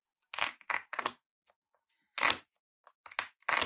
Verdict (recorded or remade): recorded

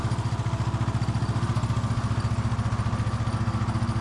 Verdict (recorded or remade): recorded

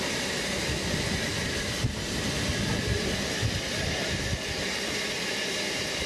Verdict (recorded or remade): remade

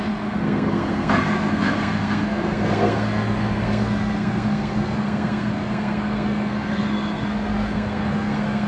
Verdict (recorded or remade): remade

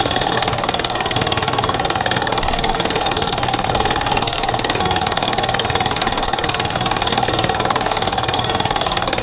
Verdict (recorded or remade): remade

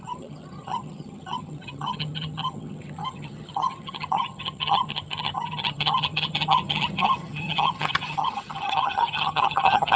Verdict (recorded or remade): remade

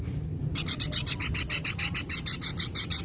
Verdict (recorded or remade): recorded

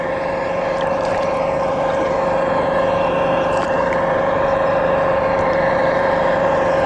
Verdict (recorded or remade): remade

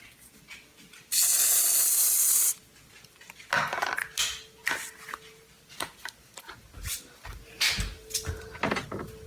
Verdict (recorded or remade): recorded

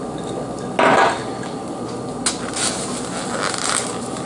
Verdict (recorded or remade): recorded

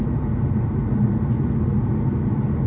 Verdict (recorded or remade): recorded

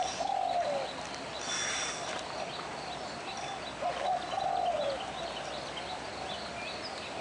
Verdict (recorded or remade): recorded